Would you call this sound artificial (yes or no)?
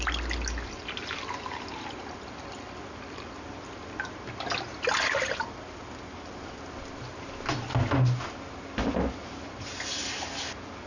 no